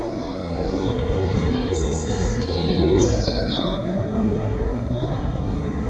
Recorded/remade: remade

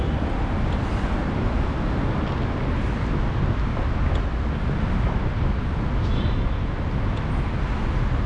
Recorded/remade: recorded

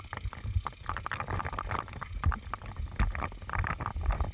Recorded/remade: recorded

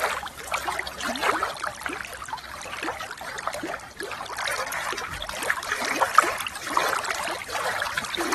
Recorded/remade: recorded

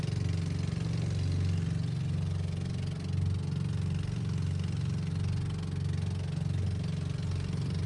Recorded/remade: recorded